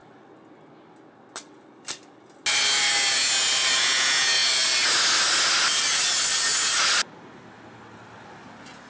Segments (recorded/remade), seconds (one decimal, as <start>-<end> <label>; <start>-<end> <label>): 0.0-8.9 recorded